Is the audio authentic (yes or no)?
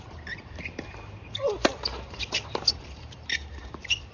no